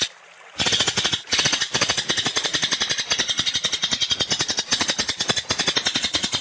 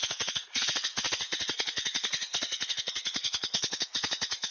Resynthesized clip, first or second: second